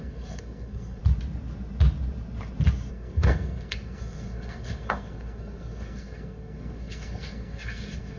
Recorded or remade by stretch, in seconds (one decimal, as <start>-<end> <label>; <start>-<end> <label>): 0.0-1.0 remade; 1.0-2.9 recorded; 2.9-8.2 remade